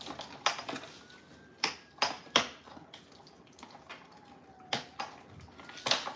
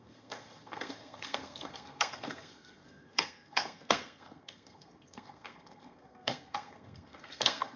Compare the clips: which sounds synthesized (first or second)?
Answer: second